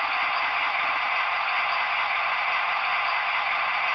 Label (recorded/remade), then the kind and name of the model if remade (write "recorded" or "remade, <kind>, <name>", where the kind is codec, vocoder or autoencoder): recorded